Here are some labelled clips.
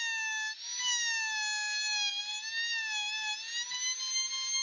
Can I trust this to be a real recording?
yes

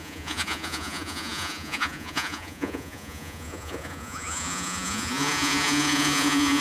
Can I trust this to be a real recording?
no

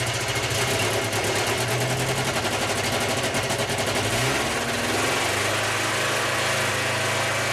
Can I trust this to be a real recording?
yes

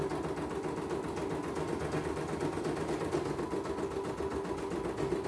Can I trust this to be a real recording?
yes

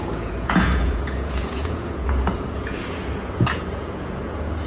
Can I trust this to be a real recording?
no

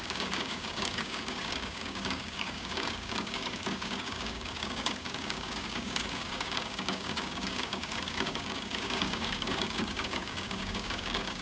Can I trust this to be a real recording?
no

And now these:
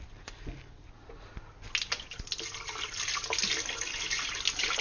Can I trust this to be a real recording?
yes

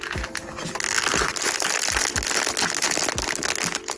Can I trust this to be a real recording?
yes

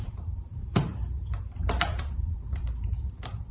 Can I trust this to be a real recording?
no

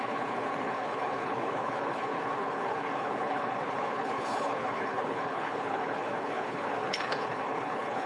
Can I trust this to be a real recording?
no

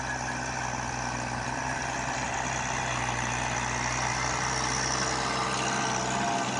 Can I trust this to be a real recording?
yes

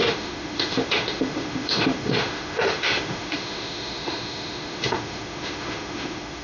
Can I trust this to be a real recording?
no